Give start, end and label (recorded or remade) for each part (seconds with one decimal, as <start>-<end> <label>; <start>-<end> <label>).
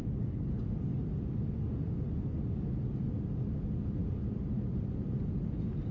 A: 0.0-5.9 recorded